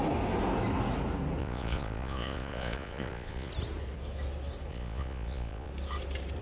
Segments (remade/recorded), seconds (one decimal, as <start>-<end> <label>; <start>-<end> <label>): 0.0-1.4 recorded; 1.4-3.5 remade; 3.5-4.7 recorded; 4.7-5.7 remade; 5.7-6.4 recorded